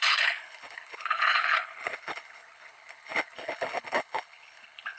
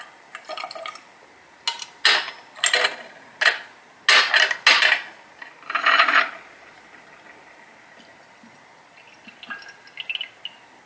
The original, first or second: second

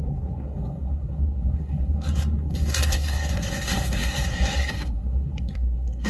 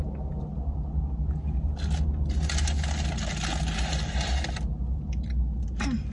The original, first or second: second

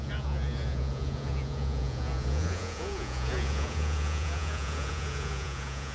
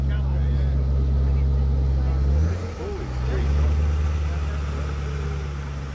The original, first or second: second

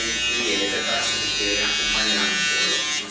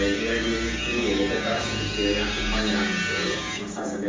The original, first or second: first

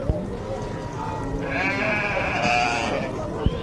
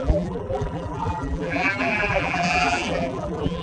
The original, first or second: first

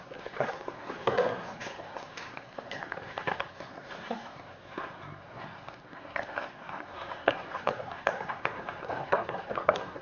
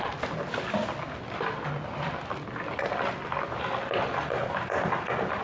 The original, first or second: second